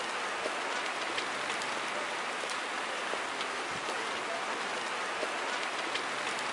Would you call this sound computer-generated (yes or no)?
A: no